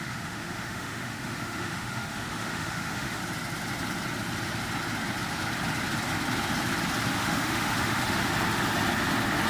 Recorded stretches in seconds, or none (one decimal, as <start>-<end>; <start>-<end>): 3.2-7.1; 8.3-9.5